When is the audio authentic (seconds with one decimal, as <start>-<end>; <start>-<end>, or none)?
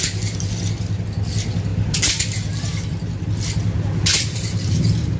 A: 0.0-4.1